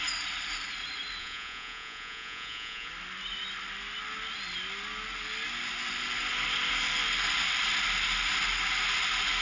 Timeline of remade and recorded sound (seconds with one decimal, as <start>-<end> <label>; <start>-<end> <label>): 0.0-1.2 recorded; 1.2-2.9 remade; 2.9-9.4 recorded